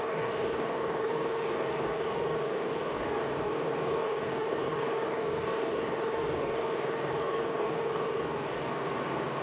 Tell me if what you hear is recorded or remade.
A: remade